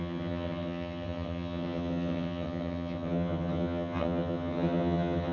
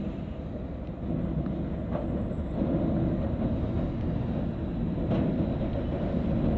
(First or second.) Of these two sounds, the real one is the second